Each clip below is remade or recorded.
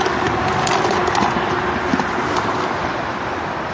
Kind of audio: recorded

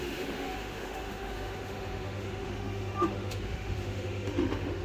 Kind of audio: remade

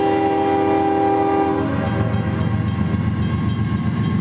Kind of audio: recorded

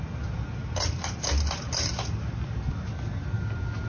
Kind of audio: recorded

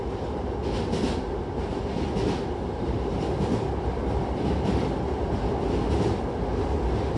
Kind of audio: recorded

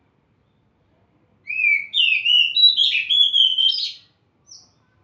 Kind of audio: recorded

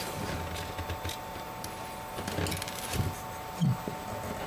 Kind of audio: recorded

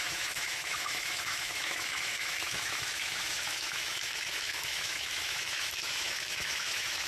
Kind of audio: remade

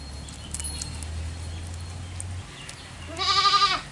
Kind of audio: recorded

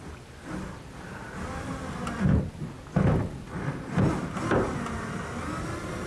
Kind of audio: recorded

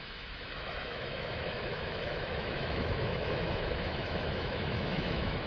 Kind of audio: remade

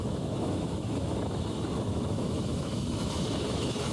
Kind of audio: remade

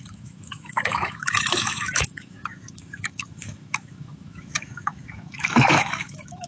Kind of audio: remade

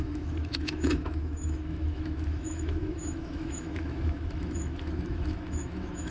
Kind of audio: remade